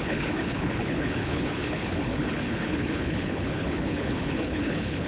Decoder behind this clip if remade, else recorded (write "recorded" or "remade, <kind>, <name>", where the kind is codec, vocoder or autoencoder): remade, codec, HILCodec